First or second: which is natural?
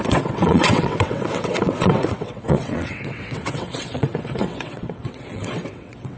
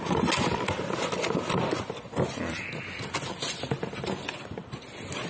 second